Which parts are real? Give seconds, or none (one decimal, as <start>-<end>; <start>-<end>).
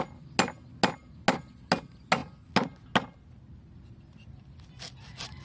0.0-5.4